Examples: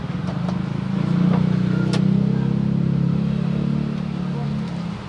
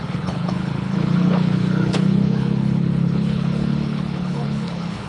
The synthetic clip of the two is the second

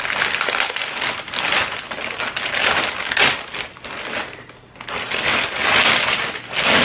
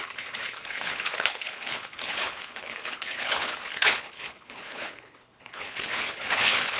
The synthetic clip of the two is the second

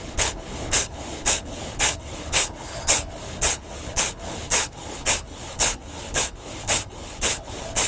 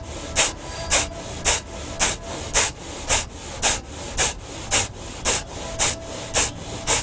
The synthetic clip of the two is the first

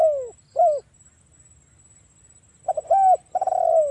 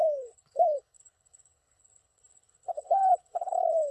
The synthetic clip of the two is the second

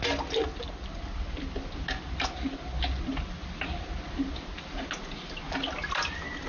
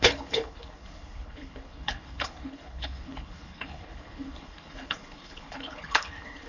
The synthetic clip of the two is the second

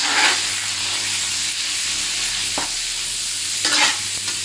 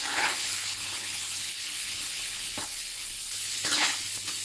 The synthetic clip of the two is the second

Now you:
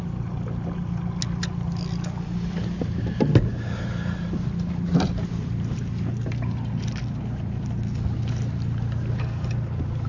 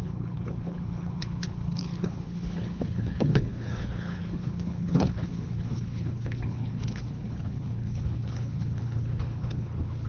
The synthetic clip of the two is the second